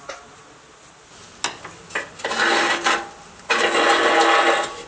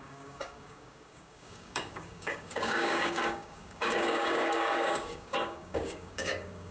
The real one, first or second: first